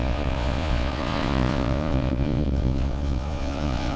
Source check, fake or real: fake